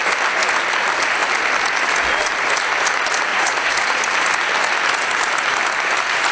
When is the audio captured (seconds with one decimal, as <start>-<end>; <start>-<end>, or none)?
0.0-3.3; 4.0-6.3